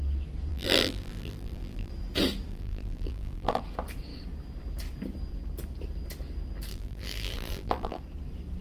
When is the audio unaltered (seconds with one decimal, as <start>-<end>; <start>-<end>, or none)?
0.0-0.5; 1.9-2.5; 3.6-6.7; 8.0-8.6